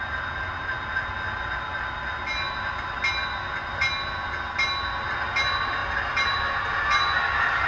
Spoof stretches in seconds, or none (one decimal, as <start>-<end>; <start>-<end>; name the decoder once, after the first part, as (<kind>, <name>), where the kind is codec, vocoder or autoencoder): 5.8-6.4 (vocoder, BigVGAN v2)